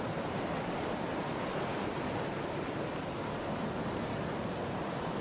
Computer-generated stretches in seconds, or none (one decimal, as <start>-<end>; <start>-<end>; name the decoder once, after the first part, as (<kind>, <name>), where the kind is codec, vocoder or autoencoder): none